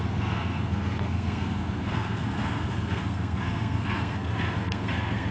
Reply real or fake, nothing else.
fake